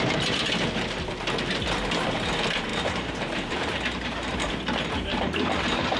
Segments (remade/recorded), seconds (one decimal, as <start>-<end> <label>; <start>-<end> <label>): 0.0-6.0 remade